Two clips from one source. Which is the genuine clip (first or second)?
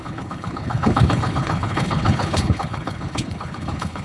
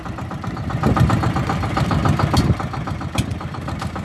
second